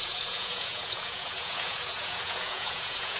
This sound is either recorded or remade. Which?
remade